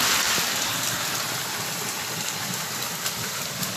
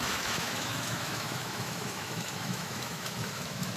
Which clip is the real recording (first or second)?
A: first